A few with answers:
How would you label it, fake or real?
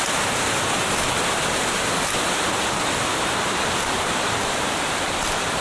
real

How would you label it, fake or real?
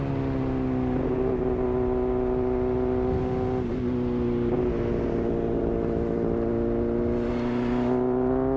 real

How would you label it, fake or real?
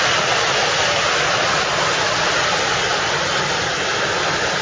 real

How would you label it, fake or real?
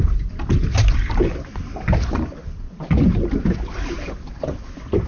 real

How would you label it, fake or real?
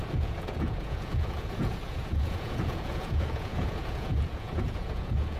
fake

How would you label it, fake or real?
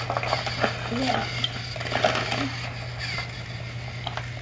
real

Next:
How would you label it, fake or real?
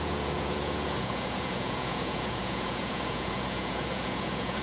fake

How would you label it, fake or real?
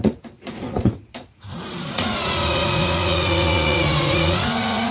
fake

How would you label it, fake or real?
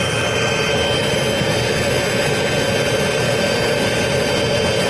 real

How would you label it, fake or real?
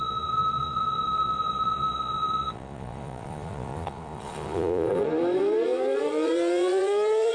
fake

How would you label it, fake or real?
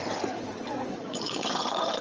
fake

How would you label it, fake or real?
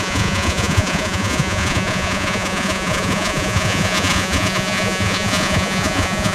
fake